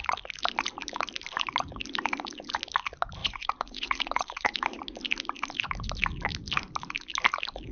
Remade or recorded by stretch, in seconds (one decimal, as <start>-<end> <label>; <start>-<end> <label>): 0.0-3.2 recorded; 3.2-4.8 remade; 4.8-7.7 recorded